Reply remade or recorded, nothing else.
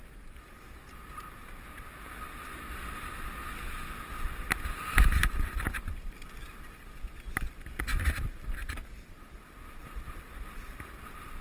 remade